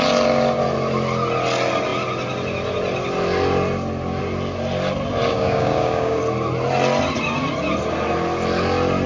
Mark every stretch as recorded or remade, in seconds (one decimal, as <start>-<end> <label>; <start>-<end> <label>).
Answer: 0.0-5.3 recorded; 5.3-6.2 remade; 6.2-9.1 recorded